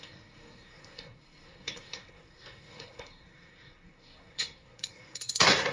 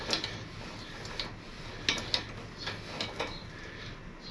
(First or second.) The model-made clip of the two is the first